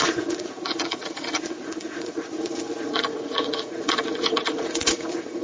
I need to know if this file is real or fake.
fake